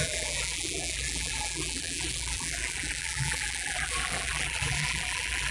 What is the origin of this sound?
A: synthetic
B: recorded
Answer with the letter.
A